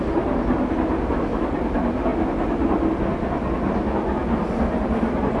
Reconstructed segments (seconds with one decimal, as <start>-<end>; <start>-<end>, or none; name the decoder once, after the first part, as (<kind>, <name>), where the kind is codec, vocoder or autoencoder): none